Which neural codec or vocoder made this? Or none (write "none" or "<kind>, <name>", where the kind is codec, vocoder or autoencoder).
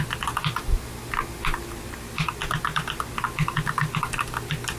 none